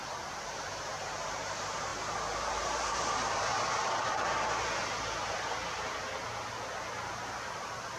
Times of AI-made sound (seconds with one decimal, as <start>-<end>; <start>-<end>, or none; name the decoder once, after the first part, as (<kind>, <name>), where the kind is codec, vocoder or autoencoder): 0.0-1.9 (vocoder, BigVGAN v2); 2.5-3.5; 7.1-8.0